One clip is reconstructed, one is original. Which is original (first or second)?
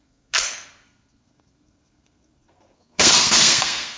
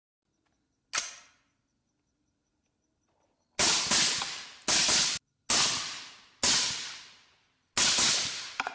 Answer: second